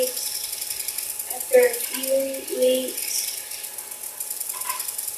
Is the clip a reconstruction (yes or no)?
no